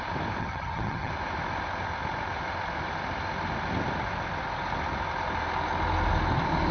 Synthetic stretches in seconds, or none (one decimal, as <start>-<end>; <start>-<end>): 0.4-1.1